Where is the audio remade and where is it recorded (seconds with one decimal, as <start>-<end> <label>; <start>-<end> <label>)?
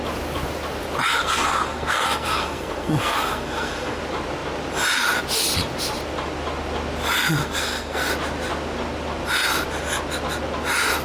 0.0-1.1 recorded; 1.1-4.0 remade; 4.0-7.4 recorded; 7.4-8.1 remade; 8.1-11.0 recorded